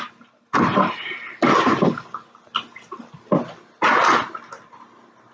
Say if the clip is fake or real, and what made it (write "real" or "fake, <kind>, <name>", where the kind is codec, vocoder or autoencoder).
real